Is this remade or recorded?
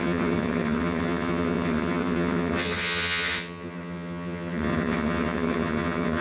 remade